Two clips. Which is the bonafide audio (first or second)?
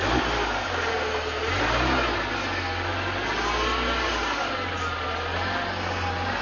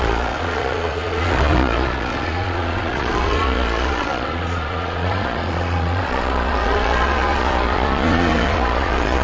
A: first